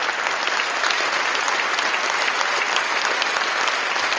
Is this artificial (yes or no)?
no